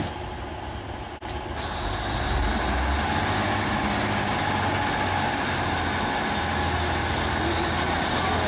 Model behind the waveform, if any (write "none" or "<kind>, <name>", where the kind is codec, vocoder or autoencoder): none